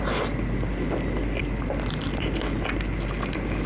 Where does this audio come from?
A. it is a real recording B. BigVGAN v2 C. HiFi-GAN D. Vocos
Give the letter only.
A